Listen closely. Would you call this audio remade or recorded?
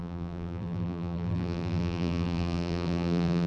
remade